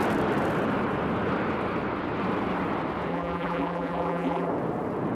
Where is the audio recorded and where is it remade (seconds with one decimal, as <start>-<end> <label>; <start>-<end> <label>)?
0.0-3.1 recorded; 3.1-4.5 remade; 4.5-5.1 recorded